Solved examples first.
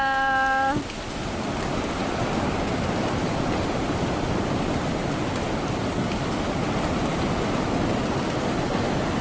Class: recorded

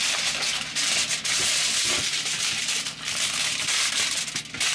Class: recorded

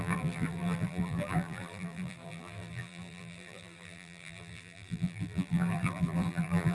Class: remade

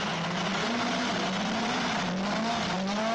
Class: recorded